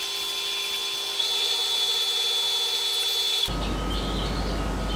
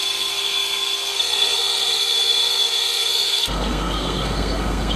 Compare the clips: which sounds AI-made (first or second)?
second